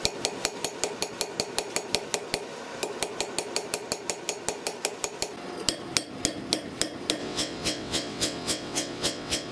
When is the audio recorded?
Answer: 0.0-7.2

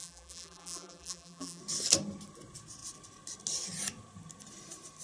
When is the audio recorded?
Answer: 1.6-5.0